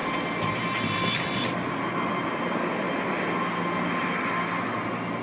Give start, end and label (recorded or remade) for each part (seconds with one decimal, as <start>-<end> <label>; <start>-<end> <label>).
0.0-5.2 recorded